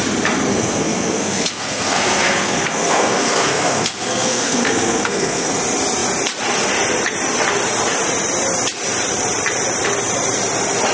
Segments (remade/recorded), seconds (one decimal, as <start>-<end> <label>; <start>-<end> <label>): 0.0-0.5 recorded; 0.5-5.5 remade; 5.5-10.9 recorded